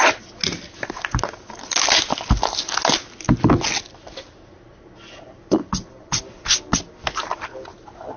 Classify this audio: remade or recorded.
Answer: recorded